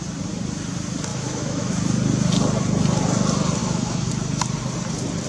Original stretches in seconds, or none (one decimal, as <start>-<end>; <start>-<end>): 0.0-1.1; 1.7-3.6; 4.1-5.3